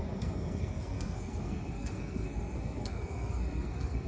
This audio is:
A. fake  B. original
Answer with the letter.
A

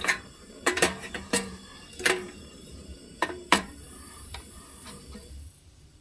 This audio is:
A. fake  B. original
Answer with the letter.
A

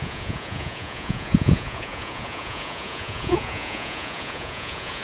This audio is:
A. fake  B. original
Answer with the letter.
A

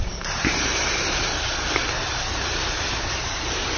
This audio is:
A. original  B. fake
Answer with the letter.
B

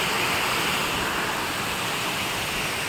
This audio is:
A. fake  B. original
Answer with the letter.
B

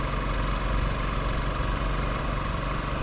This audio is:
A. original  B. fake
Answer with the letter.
A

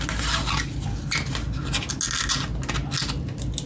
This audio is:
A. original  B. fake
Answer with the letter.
A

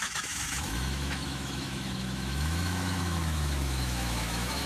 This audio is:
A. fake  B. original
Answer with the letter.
A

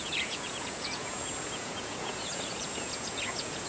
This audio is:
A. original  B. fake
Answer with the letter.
B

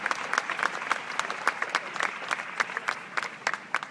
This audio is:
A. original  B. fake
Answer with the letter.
A